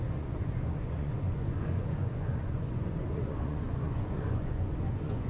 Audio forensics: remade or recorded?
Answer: remade